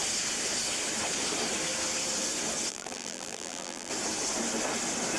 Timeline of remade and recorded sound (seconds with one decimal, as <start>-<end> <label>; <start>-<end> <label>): 0.0-2.7 recorded; 2.7-3.9 remade; 3.9-5.2 recorded